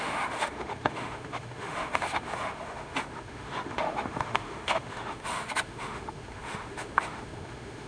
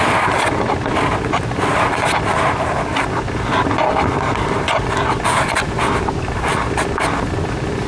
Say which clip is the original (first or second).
second